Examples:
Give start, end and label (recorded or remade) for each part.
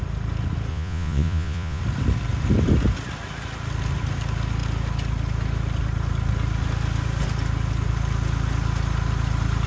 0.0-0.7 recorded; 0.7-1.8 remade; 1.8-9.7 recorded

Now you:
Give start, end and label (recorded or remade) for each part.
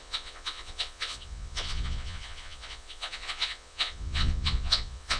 0.0-5.2 remade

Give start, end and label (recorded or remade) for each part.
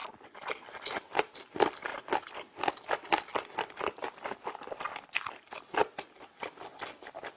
0.0-7.4 recorded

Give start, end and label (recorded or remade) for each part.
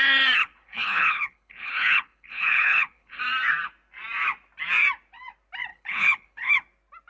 0.0-0.4 recorded; 0.4-3.2 remade; 3.2-5.7 recorded; 5.7-6.5 remade; 6.5-7.1 recorded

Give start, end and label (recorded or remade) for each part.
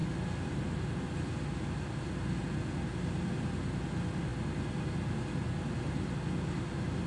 0.0-7.1 recorded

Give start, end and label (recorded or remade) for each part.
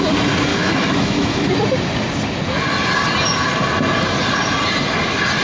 0.0-0.5 recorded; 0.5-1.5 remade; 1.5-5.4 recorded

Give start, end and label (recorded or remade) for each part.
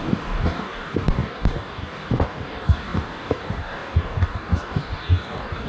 0.0-5.7 remade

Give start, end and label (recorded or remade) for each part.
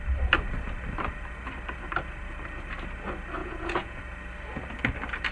0.0-3.4 recorded; 3.4-4.0 remade; 4.0-5.3 recorded